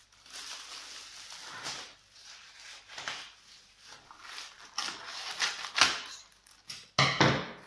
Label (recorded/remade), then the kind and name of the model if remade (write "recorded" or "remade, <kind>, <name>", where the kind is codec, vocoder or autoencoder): recorded